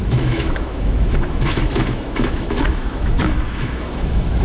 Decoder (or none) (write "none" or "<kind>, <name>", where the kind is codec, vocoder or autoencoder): autoencoder, DAC-VAE